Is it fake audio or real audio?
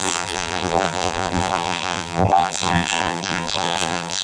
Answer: fake